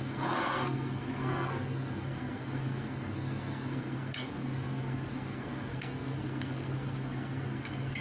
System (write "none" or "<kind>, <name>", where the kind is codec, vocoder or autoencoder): codec, SNAC